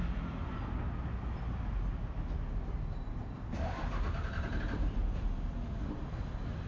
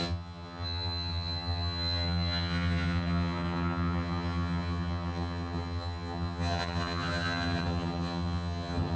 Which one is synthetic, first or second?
second